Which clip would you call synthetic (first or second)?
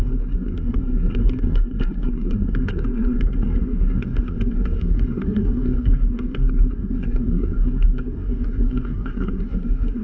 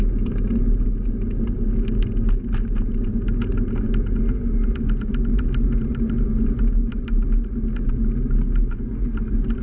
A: first